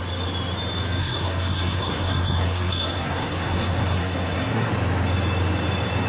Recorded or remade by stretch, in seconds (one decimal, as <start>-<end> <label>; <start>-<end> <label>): 0.0-1.0 recorded; 1.0-4.7 remade; 4.7-6.1 recorded